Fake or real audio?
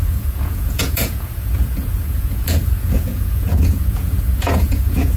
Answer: fake